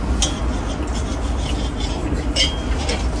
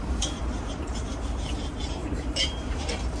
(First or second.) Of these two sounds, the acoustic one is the first